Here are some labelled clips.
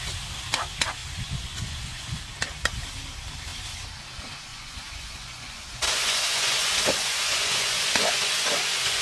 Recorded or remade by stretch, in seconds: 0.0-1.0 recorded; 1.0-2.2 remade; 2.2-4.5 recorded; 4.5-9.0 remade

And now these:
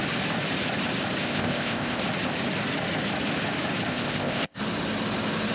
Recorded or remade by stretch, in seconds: 0.0-1.2 recorded; 1.2-2.0 remade; 2.0-3.9 recorded; 3.9-4.6 remade; 4.6-5.5 recorded

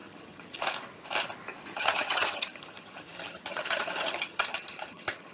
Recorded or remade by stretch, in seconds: 0.0-0.6 remade; 0.6-1.7 recorded; 1.7-5.3 remade

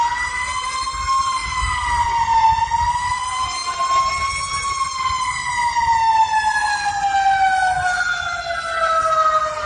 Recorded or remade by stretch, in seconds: 0.0-9.7 recorded

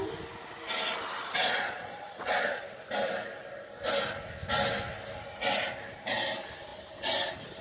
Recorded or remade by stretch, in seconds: 0.0-1.2 recorded; 1.2-2.6 remade; 2.6-7.6 recorded

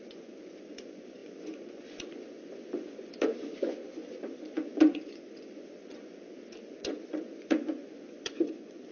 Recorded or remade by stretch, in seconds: 0.0-8.9 remade

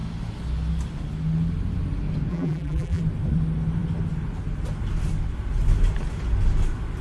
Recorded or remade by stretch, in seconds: 0.0-2.3 recorded; 2.3-3.0 remade; 3.0-7.0 recorded

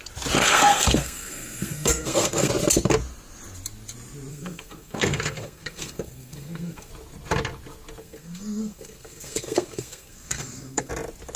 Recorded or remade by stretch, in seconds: 0.0-0.4 recorded; 0.4-2.5 remade; 2.5-4.3 recorded; 4.3-6.9 remade; 6.9-8.0 recorded; 8.0-10.9 remade; 10.9-11.4 recorded